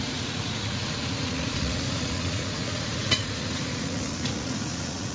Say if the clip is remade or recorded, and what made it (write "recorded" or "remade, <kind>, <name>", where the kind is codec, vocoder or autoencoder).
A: remade, vocoder, Vocos